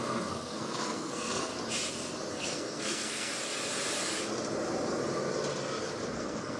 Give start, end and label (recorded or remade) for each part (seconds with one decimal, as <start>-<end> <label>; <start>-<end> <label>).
0.0-1.5 remade; 1.5-2.3 recorded; 2.3-3.3 remade; 3.3-6.1 recorded; 6.1-6.6 remade